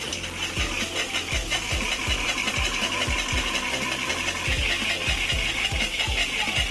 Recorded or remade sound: recorded